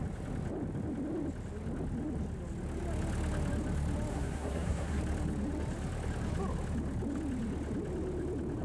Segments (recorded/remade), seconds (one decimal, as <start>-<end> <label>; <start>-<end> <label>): 0.0-4.1 recorded; 4.1-5.0 remade; 5.0-8.6 recorded